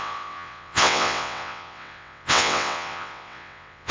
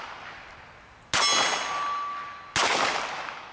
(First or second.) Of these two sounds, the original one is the second